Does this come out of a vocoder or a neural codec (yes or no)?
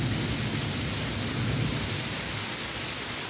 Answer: no